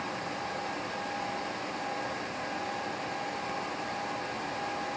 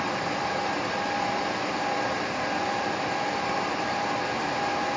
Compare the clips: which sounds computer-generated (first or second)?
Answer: second